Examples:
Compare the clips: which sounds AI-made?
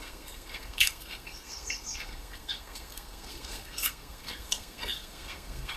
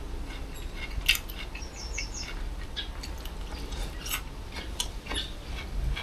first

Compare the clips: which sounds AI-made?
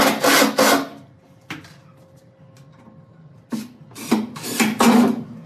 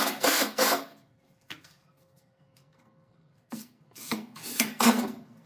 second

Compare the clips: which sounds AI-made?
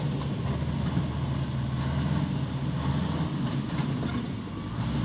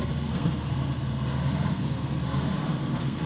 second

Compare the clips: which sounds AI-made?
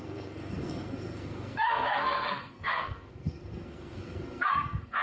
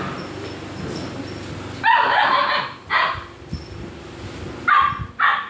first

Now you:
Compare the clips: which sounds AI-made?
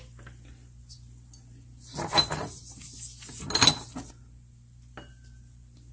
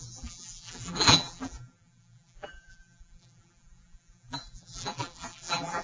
second